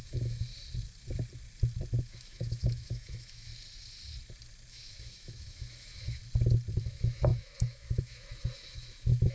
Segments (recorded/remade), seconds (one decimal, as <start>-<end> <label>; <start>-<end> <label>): 0.0-0.5 remade; 0.5-2.0 recorded; 2.0-3.5 remade; 3.5-4.7 recorded; 4.7-6.2 remade; 6.2-6.8 recorded; 6.8-9.3 remade